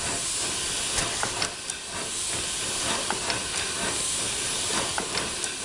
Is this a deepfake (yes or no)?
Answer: no